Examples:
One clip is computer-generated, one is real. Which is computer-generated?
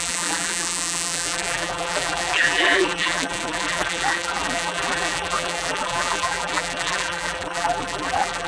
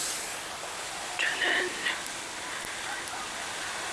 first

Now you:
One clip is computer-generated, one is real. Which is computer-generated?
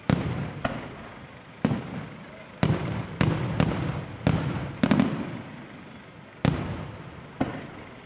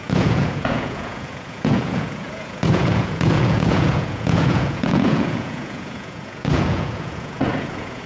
second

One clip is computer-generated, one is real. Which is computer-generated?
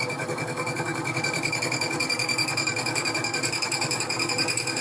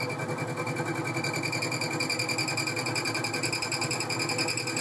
first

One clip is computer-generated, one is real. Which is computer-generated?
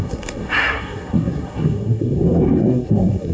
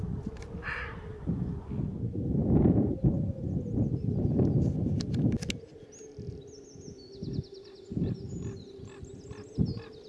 first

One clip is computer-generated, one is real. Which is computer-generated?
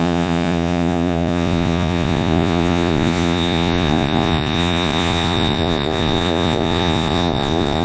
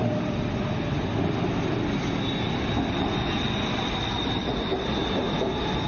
first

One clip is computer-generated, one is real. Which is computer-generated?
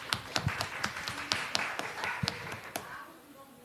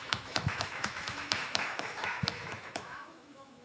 second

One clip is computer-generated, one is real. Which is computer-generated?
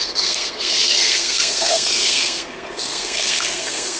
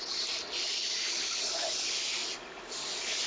first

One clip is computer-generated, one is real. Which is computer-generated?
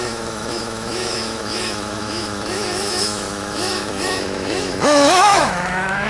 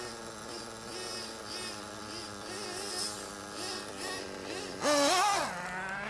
first